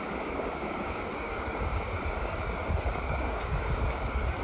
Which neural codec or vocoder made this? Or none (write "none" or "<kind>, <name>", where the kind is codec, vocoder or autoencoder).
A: codec, DAC